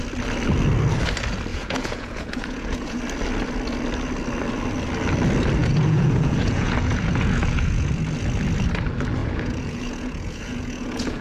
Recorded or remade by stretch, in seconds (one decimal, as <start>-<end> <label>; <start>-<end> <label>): 0.0-1.5 recorded; 1.5-3.0 remade; 3.0-5.6 recorded; 5.6-7.9 remade; 7.9-9.2 recorded; 9.2-11.2 remade